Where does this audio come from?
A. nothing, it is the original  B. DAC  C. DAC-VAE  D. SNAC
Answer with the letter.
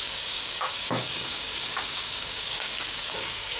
B